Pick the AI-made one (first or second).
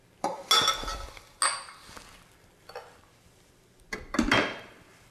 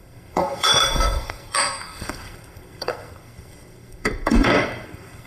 second